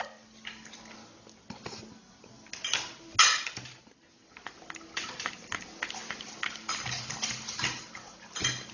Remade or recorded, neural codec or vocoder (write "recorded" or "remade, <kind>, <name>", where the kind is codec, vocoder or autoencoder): recorded